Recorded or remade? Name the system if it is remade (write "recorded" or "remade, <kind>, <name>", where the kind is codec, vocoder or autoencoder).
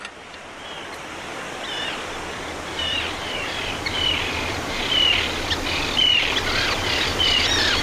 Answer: recorded